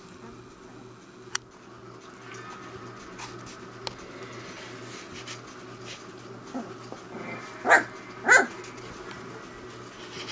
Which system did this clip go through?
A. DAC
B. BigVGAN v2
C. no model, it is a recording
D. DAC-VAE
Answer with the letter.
C